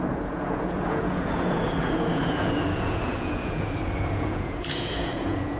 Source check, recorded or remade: remade